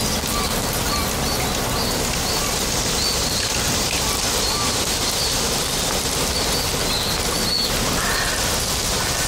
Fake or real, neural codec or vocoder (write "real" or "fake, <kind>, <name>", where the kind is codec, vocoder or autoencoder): real